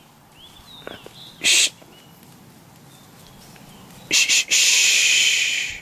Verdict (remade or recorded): recorded